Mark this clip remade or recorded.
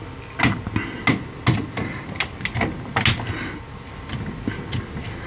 recorded